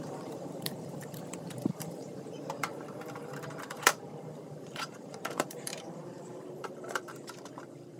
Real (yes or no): no